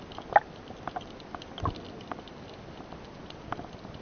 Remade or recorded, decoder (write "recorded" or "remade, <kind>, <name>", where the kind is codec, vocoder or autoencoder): recorded